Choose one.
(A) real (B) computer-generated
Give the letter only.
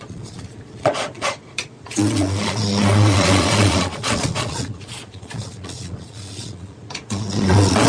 B